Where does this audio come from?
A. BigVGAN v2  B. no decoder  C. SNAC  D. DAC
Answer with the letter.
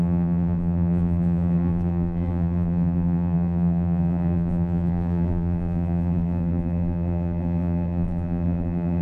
A